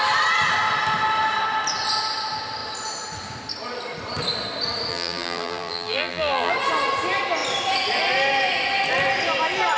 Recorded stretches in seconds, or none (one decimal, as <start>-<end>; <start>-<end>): 0.0-4.9; 6.5-9.8